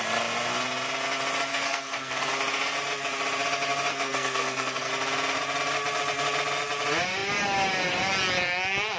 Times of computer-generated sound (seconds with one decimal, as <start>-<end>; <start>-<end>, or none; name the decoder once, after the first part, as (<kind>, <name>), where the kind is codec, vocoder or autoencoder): 1.5-2.3 (codec, SNAC); 3.9-4.9